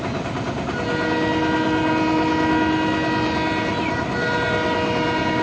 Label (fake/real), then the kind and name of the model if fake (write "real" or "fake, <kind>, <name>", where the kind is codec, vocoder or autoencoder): real